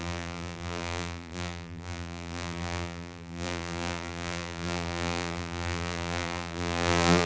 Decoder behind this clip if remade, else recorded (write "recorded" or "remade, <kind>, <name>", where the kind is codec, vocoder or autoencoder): remade, vocoder, BigVGAN v2